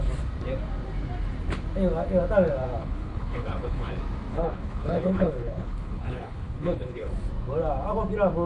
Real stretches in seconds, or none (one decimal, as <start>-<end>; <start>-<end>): 0.0-2.8; 3.9-4.3; 7.1-8.5